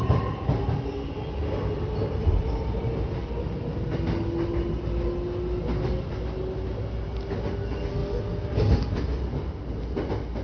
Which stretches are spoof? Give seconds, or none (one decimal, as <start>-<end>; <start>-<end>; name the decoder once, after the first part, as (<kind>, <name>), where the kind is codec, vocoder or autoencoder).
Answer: none